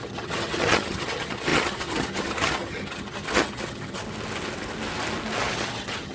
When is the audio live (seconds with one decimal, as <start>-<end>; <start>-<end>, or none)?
4.0-5.4